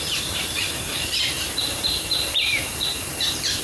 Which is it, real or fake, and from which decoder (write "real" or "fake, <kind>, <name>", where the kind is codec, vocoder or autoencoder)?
fake, vocoder, BigVGAN v2